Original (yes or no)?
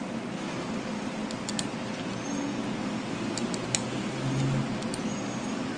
yes